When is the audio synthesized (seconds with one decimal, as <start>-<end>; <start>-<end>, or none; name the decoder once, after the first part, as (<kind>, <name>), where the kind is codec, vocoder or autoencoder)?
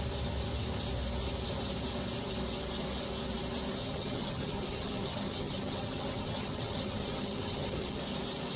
3.8-8.0 (vocoder, HiFi-GAN)